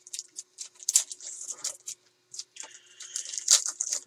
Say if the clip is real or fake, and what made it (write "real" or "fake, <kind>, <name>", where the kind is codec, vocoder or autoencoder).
fake, vocoder, BigVGAN v2